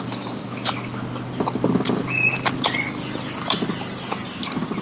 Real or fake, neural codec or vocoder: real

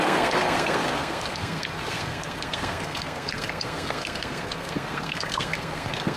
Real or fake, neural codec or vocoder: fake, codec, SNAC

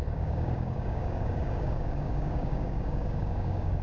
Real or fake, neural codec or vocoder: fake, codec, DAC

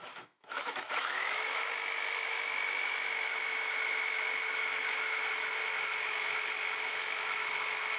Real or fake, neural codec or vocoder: fake, autoencoder, DAC-VAE